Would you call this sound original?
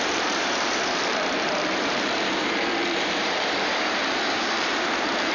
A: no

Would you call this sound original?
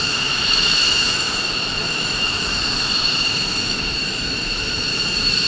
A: no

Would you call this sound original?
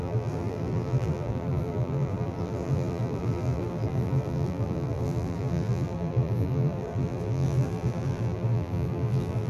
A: no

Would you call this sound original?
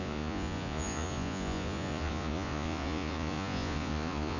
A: no